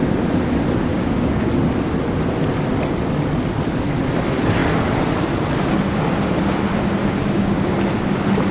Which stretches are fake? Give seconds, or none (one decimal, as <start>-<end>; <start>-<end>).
0.9-1.5; 7.0-7.8